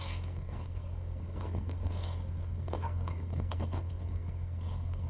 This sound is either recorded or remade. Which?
remade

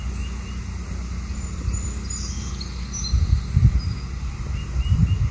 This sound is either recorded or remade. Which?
recorded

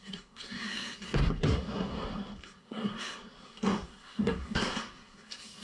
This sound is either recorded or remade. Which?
remade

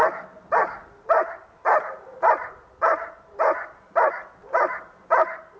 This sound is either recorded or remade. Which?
recorded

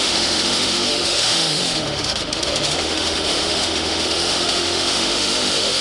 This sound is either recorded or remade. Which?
remade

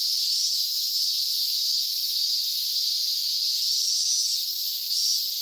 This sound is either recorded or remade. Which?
recorded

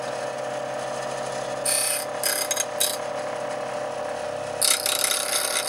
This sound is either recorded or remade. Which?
recorded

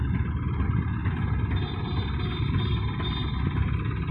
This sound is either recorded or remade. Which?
recorded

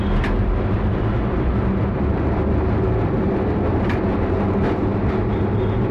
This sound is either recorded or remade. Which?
recorded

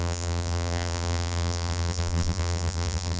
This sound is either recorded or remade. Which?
remade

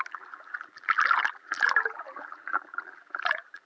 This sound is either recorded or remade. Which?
remade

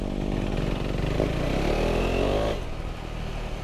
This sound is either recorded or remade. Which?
recorded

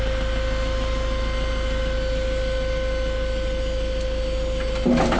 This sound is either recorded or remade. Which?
recorded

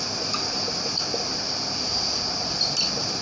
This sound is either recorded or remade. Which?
recorded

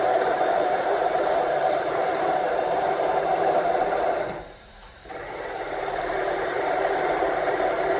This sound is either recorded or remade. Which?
remade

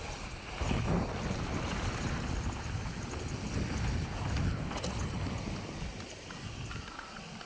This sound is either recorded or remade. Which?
recorded